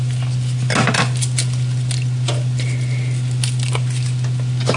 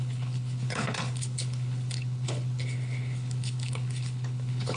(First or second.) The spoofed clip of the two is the second